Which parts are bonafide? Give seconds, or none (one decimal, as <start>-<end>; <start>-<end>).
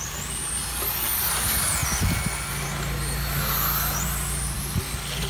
0.0-5.3